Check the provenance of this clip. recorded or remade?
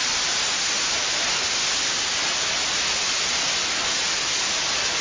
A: recorded